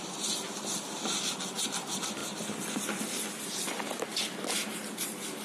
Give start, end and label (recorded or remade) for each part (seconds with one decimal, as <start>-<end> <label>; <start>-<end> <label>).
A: 0.0-5.4 recorded